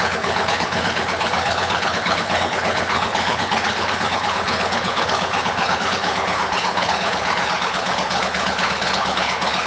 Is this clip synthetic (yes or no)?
yes